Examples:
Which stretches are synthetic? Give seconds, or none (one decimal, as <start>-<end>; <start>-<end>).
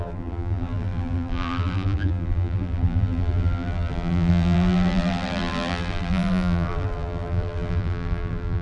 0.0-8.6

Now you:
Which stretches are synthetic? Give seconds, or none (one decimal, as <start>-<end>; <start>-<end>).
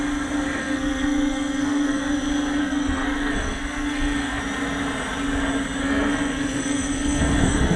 0.6-2.0; 2.6-4.4; 5.8-7.8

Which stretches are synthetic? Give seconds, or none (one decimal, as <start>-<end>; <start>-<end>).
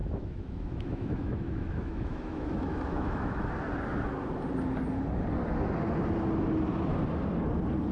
0.0-3.5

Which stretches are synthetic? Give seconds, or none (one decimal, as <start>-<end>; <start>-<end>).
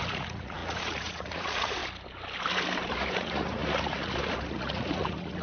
0.0-1.8; 2.9-5.4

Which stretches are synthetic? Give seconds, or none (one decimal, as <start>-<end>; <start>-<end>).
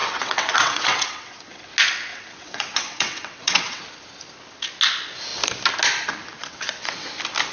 0.0-1.6; 2.1-3.8; 6.4-7.1